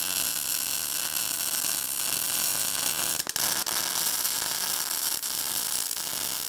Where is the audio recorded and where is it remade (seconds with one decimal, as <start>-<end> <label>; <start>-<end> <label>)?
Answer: 0.0-6.5 recorded